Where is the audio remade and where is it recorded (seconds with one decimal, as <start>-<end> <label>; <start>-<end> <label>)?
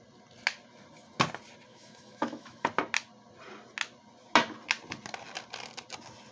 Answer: 0.0-1.7 recorded; 1.7-2.7 remade; 2.7-6.3 recorded